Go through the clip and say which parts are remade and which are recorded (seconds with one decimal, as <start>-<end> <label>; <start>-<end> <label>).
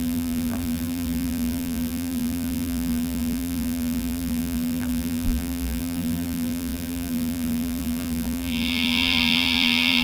0.0-10.0 remade